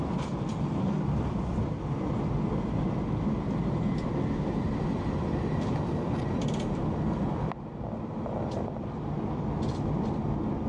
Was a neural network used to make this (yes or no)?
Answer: no